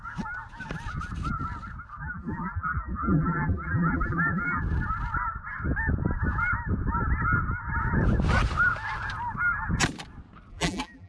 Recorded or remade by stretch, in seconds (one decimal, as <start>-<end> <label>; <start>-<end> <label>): 0.0-2.0 recorded; 2.0-4.6 remade; 4.6-10.5 recorded; 10.5-11.1 remade